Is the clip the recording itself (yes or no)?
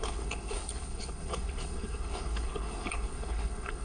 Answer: no